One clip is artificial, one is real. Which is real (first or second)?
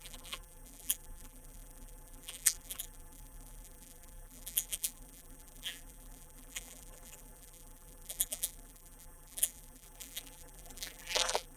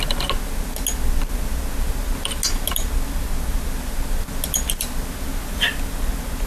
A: second